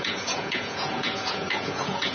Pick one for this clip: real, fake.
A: fake